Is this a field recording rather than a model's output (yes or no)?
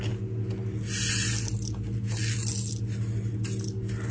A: yes